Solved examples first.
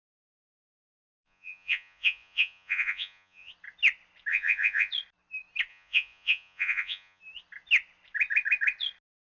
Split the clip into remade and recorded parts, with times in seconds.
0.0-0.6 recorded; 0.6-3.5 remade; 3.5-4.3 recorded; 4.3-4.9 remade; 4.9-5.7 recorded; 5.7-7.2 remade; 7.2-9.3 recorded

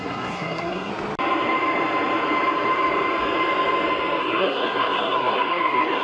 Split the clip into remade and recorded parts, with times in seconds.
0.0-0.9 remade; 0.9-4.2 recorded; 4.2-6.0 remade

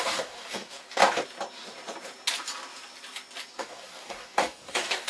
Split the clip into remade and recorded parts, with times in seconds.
0.0-1.0 remade; 1.0-3.5 recorded; 3.5-5.1 remade

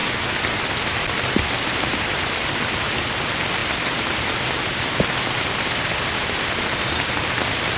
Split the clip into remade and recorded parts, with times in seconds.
0.0-0.8 recorded; 0.8-7.8 remade

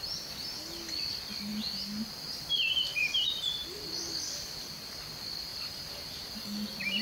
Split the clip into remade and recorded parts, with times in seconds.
0.0-2.9 recorded; 2.9-4.1 remade; 4.1-5.5 recorded; 5.5-7.0 remade

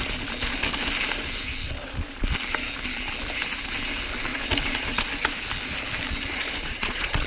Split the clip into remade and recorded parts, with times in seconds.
0.0-6.3 recorded; 6.3-7.3 remade

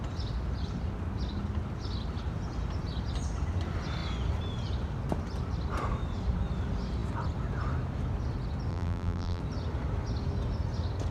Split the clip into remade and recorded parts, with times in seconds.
0.0-8.7 recorded; 8.7-9.4 remade; 9.4-11.1 recorded